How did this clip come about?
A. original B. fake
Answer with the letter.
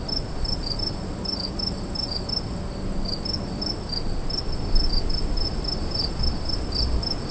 A